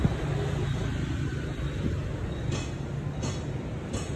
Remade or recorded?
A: recorded